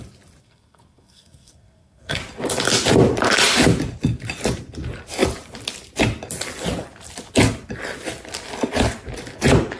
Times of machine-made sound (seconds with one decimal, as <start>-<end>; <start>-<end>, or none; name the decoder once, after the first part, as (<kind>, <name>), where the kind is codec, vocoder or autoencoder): 0.4-2.2 (codec, SNAC)

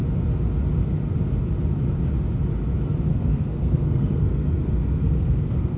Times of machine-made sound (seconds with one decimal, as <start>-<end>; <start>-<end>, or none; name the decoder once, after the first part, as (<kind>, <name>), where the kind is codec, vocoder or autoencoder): 3.1-5.8 (codec, SNAC)

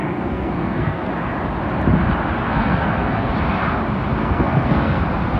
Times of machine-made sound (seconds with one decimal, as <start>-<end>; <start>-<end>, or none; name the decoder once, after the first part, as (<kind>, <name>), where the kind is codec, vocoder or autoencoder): 0.0-1.1 (codec, SNAC); 2.4-3.3; 4.2-5.0

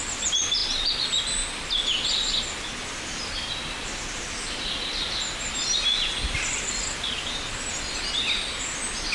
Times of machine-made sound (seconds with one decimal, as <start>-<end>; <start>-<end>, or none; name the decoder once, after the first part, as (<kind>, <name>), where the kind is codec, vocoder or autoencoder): none